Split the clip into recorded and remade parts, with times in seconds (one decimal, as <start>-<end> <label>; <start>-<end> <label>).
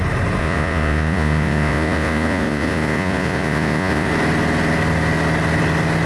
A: 0.0-0.4 recorded; 0.4-4.1 remade; 4.1-6.1 recorded